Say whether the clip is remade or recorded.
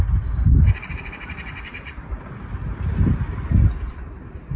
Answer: remade